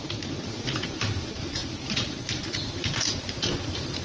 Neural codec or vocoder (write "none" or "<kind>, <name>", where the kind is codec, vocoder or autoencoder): vocoder, BigVGAN v2